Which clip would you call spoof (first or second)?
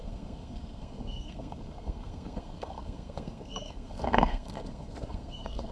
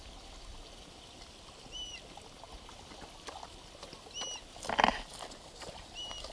first